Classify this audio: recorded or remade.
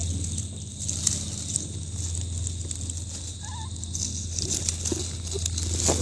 recorded